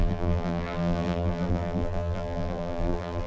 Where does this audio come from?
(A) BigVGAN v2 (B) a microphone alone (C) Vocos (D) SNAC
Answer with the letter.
A